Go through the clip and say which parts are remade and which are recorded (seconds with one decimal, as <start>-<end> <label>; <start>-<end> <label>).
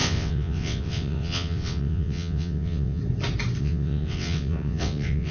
0.0-3.0 remade; 3.0-3.6 recorded; 3.6-5.3 remade